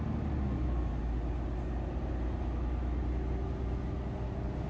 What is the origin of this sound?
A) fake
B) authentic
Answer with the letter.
B